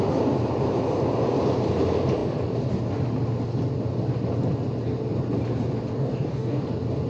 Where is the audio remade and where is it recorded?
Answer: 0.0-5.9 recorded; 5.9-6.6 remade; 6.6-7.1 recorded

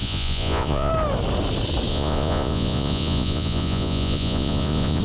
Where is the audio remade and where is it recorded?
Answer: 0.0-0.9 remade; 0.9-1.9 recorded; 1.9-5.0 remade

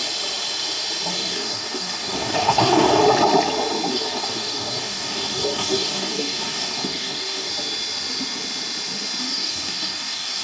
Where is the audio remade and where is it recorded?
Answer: 0.0-1.1 recorded; 1.1-3.0 remade; 3.0-3.9 recorded; 3.9-7.5 remade; 7.5-9.2 recorded; 9.2-10.4 remade

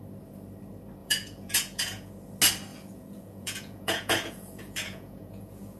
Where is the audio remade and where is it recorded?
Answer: 0.0-1.0 recorded; 1.0-2.1 remade; 2.1-2.7 recorded; 2.7-5.8 remade